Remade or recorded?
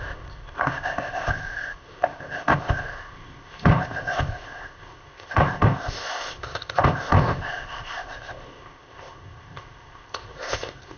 remade